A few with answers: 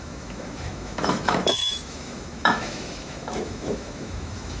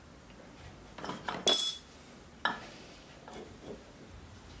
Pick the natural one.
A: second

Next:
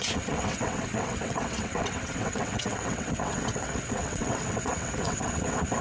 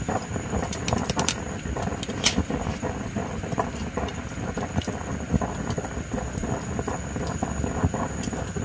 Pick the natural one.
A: second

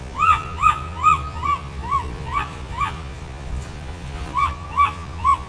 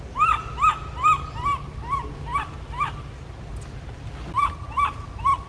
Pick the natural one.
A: second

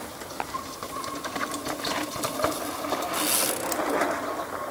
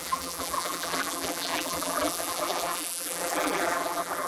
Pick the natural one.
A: first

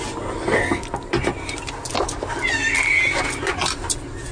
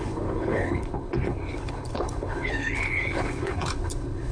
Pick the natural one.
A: first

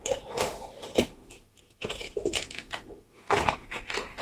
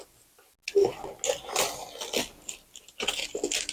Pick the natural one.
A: second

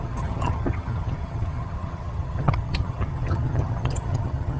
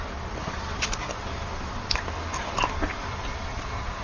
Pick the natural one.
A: second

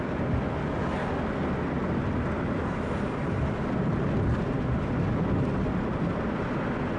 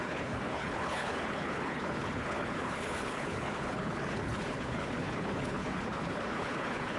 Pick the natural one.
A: first